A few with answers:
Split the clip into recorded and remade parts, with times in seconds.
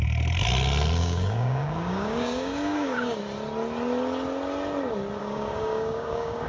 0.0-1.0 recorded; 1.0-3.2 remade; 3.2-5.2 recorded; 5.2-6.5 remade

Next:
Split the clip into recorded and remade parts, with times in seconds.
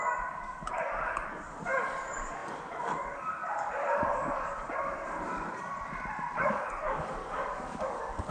0.0-5.7 remade; 5.7-6.4 recorded; 6.4-8.3 remade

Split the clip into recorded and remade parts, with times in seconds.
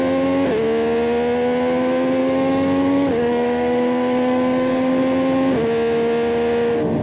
0.0-2.2 recorded; 2.2-5.0 remade; 5.0-7.0 recorded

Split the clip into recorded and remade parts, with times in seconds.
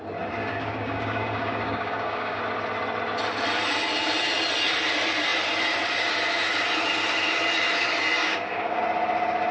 0.0-0.4 recorded; 0.4-2.4 remade; 2.4-8.2 recorded; 8.2-8.8 remade; 8.8-9.5 recorded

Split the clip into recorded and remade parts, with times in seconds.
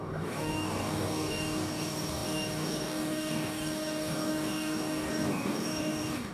0.0-6.3 remade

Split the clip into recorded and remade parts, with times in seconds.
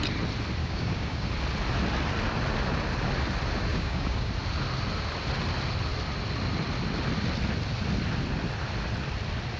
0.0-0.6 recorded; 0.6-1.3 remade; 1.3-3.7 recorded; 3.7-4.3 remade; 4.3-9.6 recorded